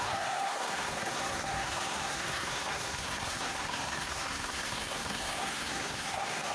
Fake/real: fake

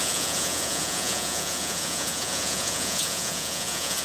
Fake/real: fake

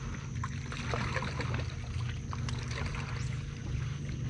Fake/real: real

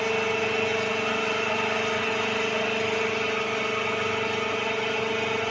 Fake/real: real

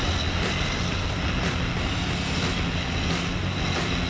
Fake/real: real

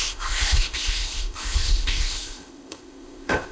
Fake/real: fake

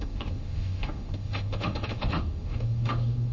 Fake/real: fake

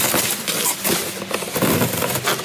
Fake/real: real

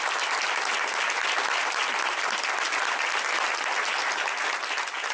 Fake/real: real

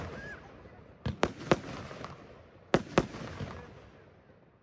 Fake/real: real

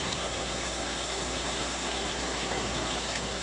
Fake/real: fake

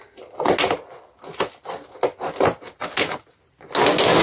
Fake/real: real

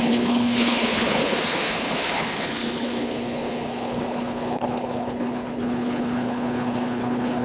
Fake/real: fake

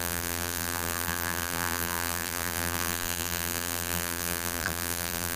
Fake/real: fake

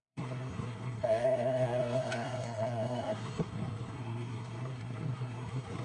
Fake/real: fake